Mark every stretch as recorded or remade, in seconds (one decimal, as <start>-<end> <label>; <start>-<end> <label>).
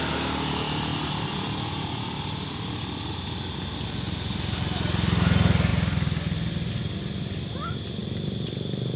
0.0-9.0 recorded